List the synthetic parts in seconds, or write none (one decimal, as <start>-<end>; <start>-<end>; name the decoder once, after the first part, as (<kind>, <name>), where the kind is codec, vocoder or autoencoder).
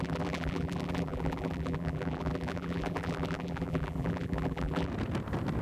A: 0.0-4.9 (vocoder, BigVGAN v2)